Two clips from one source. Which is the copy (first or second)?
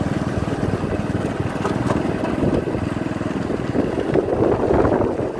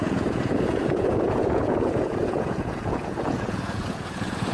second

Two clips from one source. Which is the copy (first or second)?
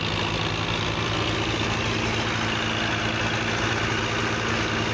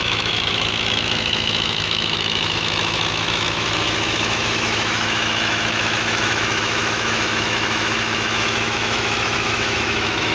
second